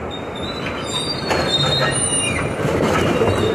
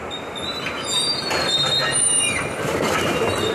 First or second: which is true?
second